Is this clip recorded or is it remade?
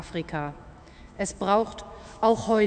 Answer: remade